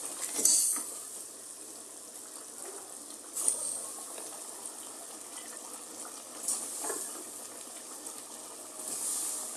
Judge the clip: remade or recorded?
recorded